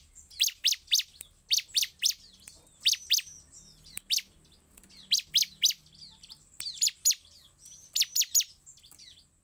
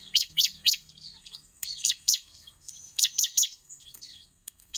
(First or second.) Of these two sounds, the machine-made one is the second